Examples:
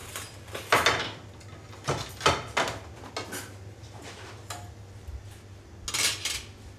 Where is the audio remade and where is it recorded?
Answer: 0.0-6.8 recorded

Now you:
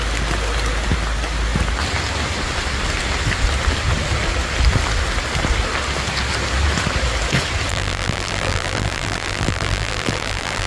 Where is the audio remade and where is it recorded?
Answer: 0.0-7.7 recorded; 7.7-10.7 remade